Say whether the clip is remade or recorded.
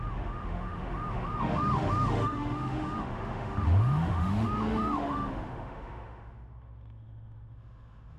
remade